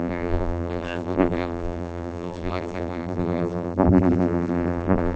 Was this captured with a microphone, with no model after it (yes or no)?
no